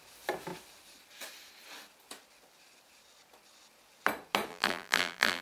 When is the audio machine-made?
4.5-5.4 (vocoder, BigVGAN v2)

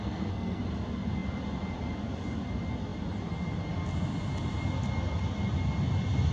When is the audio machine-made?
0.0-0.6 (codec, SNAC)

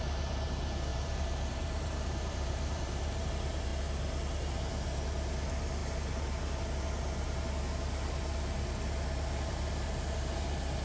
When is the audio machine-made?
0.9-3.3 (vocoder, BigVGAN v2)

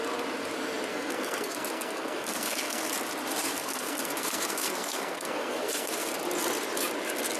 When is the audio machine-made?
0.9-2.9 (codec, SNAC); 3.4-6.2

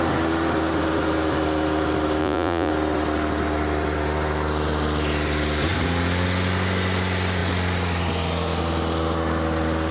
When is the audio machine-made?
2.2-2.7 (vocoder, Vocos)

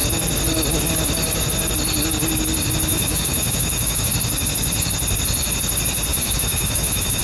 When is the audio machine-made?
2.9-4.1 (autoencoder, DAC-VAE); 6.1-7.2

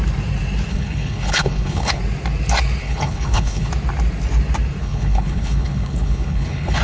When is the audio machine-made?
0.7-2.0 (codec, HILCodec); 2.8-3.7; 4.8-6.8